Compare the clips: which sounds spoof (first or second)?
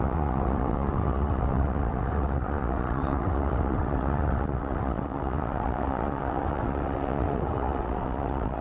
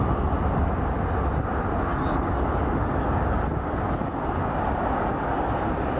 first